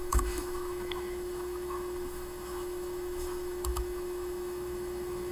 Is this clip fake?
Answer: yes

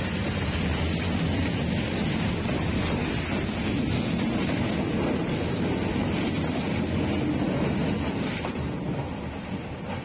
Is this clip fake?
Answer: no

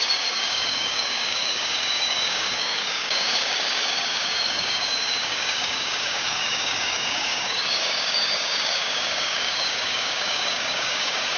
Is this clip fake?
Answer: yes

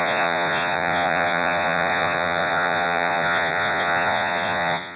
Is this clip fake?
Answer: yes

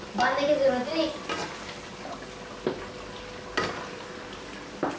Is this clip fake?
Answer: no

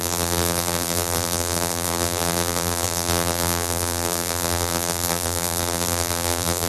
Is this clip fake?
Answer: yes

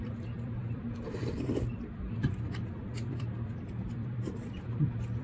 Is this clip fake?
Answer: yes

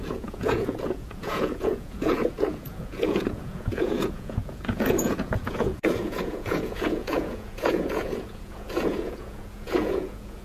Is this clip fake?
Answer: yes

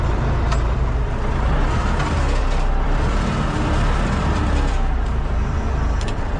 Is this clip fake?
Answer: yes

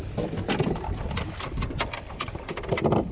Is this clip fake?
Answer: no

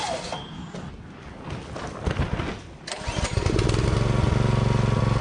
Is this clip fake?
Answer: no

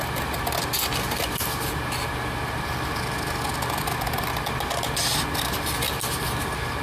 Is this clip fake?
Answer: no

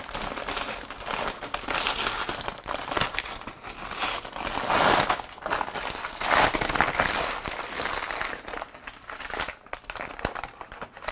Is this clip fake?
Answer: no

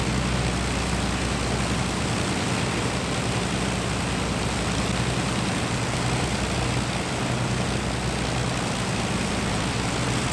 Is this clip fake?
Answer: no